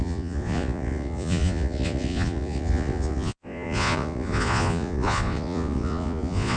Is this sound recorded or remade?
remade